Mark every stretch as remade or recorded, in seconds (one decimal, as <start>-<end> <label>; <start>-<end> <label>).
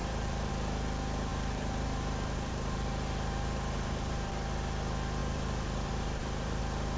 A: 0.0-0.5 remade; 0.5-1.3 recorded; 1.3-4.3 remade; 4.3-5.2 recorded; 5.2-6.6 remade; 6.6-7.0 recorded